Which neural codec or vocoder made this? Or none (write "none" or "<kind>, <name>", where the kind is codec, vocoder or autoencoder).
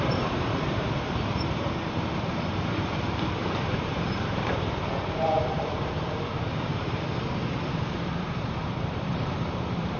vocoder, BigVGAN v2